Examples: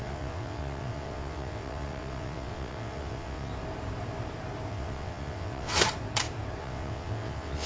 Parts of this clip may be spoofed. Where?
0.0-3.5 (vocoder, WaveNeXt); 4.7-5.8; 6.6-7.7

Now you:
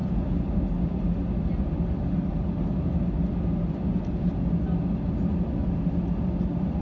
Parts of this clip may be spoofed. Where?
none

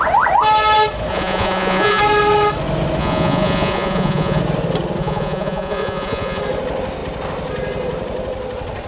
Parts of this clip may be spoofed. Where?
1.1-2.0 (vocoder, Vocos); 3.0-4.4; 5.0-6.4

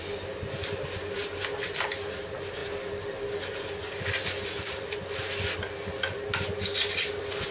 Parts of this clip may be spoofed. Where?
none

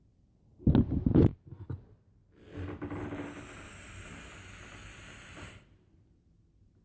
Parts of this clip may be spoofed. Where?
none